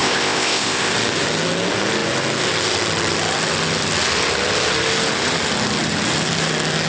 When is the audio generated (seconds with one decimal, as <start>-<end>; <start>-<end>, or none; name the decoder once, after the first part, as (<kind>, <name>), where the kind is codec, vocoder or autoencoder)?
0.0-0.9 (codec, ZipCodec)